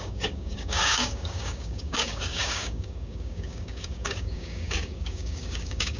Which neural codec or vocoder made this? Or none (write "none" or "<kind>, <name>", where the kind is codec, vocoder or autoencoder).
codec, DAC